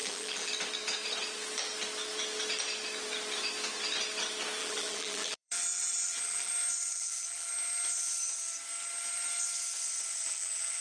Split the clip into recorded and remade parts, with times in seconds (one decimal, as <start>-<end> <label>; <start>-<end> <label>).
0.0-0.5 remade; 0.5-4.6 recorded; 4.6-6.5 remade; 6.5-6.9 recorded; 6.9-7.5 remade; 7.5-10.1 recorded; 10.1-10.8 remade